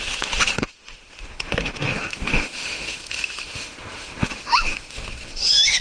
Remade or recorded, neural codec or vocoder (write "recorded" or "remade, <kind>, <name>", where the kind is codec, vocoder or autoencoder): remade, autoencoder, DAC-VAE